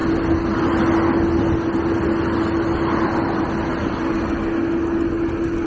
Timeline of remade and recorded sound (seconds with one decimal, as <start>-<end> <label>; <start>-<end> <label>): 0.0-5.7 recorded